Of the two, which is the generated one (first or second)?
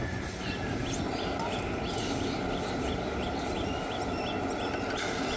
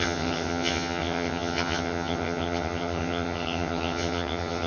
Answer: second